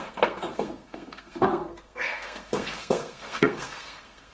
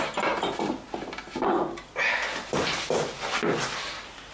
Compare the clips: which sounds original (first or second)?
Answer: second